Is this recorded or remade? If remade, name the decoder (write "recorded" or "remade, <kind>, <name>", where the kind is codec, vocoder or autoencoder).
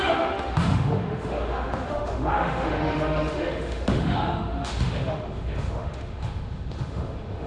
remade, autoencoder, DAC-VAE